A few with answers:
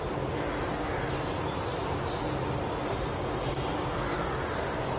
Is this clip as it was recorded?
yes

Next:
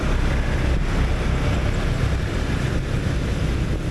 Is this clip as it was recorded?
yes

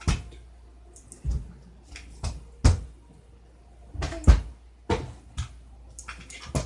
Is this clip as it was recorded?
yes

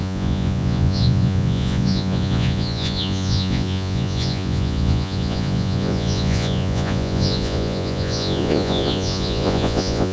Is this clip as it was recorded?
no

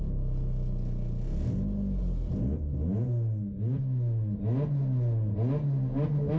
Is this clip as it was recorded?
yes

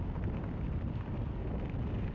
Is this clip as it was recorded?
yes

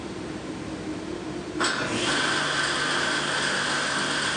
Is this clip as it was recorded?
yes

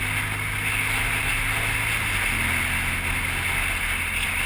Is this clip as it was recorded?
yes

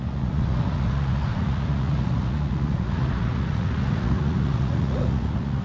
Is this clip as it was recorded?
no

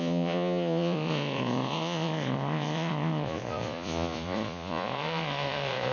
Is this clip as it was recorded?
no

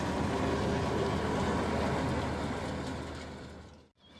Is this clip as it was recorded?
yes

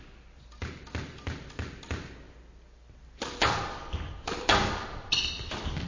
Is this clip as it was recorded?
yes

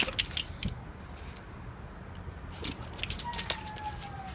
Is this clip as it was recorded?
yes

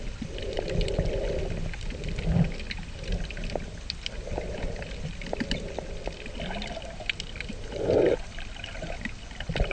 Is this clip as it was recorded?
yes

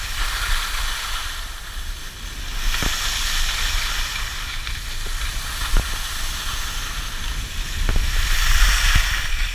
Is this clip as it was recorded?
yes